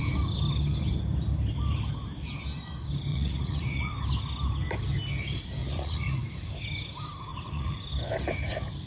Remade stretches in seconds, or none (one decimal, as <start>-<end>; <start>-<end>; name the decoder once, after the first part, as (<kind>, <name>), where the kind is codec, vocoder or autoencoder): 3.1-3.9 (vocoder, Vocos); 5.6-6.2; 7.3-7.9